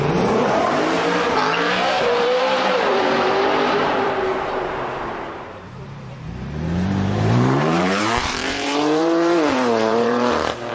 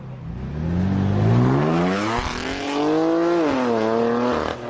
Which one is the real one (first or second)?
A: second